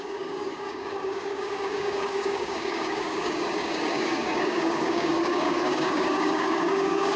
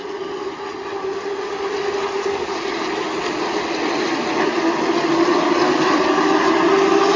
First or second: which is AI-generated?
first